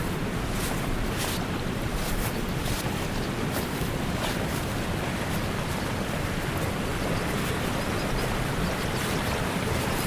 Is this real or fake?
real